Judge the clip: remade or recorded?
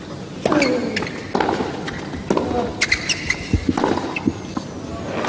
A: recorded